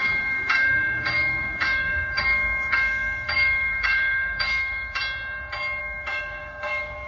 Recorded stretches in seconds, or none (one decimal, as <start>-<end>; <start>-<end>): 5.0-5.8